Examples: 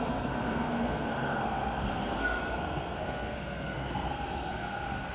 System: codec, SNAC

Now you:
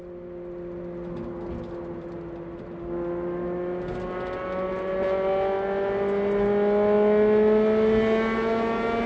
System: none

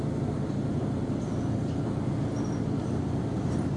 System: vocoder, BigVGAN v2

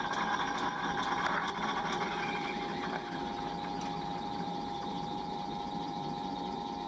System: vocoder, BigVGAN v2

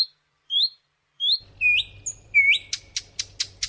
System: none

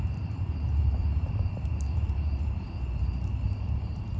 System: vocoder, BigVGAN v2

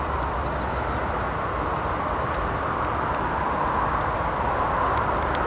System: none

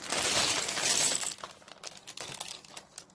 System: none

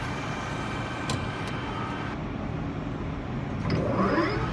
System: none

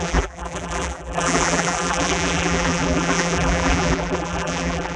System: vocoder, BigVGAN v2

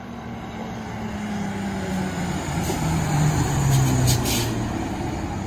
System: none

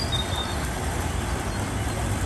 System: none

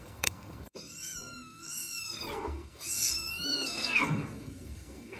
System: codec, SNAC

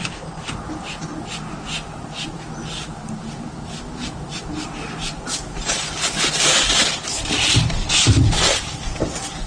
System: none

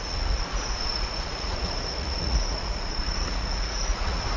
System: vocoder, Vocos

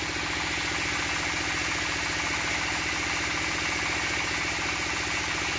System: none